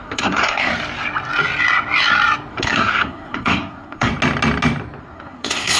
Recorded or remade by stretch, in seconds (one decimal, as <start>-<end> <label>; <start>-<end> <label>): 0.0-0.7 remade; 0.7-2.5 recorded; 2.5-4.1 remade; 4.1-5.0 recorded; 5.0-5.8 remade